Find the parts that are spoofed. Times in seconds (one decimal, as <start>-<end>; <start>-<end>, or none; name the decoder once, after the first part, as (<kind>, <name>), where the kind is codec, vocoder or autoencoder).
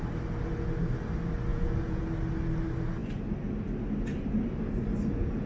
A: 1.5-2.0 (vocoder, Vocos)